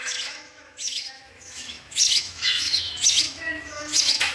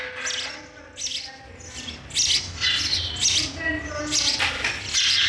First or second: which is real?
second